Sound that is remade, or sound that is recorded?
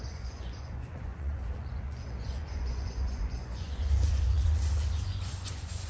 remade